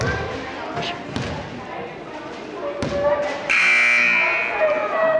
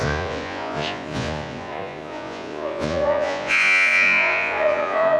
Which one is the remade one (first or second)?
second